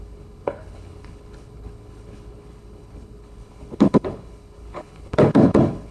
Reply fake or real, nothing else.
fake